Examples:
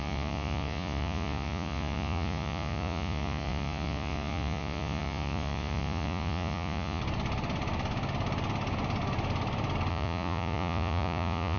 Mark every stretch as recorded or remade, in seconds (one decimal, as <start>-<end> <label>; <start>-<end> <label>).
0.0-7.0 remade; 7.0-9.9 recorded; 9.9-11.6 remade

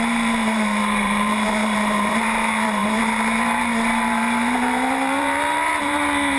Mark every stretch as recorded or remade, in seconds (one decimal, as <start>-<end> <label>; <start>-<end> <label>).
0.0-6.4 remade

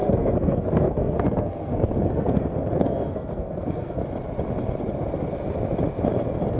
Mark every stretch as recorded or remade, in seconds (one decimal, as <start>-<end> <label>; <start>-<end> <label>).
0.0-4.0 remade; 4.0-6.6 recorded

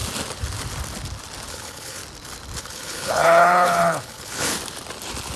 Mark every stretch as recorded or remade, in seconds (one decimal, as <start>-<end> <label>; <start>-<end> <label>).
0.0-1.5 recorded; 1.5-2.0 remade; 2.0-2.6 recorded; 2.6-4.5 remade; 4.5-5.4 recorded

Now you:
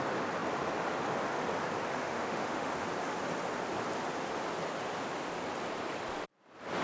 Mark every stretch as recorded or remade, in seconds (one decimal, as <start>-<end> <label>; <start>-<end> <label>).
0.0-2.0 recorded; 2.0-2.7 remade; 2.7-6.8 recorded